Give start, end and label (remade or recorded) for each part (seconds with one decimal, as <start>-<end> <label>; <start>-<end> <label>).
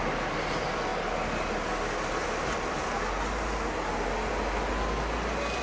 0.0-5.6 recorded